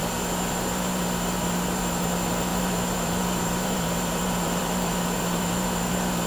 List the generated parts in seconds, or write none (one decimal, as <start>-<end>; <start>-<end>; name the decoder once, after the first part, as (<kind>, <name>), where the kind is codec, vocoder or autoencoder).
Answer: 0.0-6.3 (vocoder, BigVGAN v2)